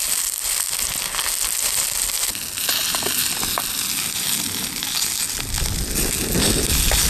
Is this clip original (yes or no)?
yes